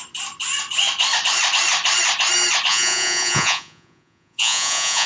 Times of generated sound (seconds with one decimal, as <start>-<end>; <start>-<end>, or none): 2.7-5.1